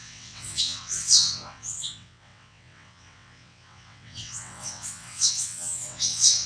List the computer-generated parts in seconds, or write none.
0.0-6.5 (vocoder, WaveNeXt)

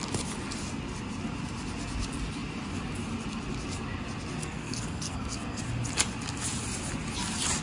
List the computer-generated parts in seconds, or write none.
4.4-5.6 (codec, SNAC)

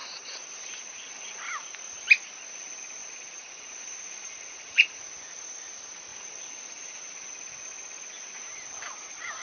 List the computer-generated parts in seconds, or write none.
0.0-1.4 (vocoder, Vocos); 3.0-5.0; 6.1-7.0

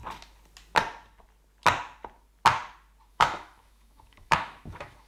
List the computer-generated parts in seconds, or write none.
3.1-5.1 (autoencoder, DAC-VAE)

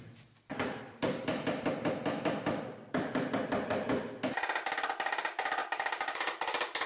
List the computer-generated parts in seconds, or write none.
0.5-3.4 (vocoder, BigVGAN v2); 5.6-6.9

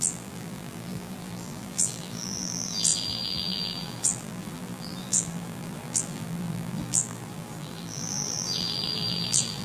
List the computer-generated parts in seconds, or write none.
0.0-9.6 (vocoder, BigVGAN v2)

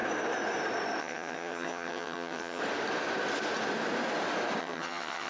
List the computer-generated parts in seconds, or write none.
1.0-2.6 (vocoder, HiFi-GAN); 4.6-5.3

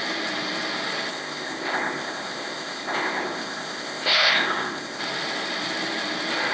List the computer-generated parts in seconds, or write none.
1.1-5.0 (codec, ZipCodec)